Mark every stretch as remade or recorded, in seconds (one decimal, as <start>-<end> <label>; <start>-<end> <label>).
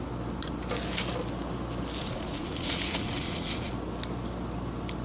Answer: 0.0-2.0 recorded; 2.0-3.7 remade; 3.7-5.0 recorded